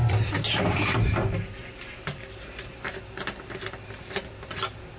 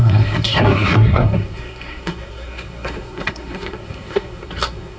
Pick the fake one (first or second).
second